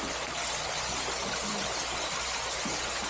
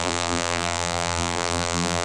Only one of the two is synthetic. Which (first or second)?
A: second